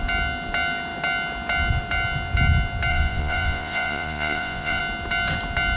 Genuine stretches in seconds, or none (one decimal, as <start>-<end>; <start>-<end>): 0.0-2.9; 4.8-5.8